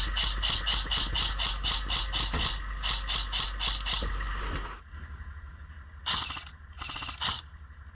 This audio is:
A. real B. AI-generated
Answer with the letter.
A